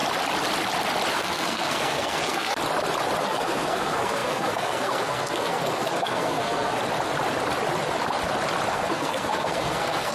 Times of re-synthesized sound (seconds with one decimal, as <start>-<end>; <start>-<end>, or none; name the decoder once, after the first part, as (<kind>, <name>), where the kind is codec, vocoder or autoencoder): 1.1-2.5 (codec, SNAC); 3.2-6.8; 8.7-10.1